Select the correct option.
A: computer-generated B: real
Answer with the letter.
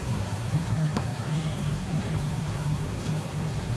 A